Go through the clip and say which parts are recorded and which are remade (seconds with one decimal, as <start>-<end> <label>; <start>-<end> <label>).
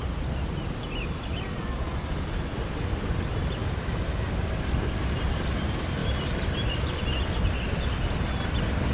0.0-3.6 recorded; 3.6-4.9 remade; 4.9-6.0 recorded; 6.0-6.7 remade; 6.7-8.9 recorded